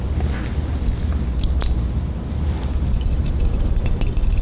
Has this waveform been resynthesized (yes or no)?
no